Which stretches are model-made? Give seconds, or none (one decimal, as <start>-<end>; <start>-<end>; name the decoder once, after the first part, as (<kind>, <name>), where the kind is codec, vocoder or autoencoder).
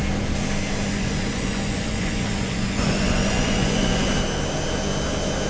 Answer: 0.9-4.1 (vocoder, Vocos)